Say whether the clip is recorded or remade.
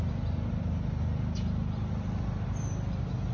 recorded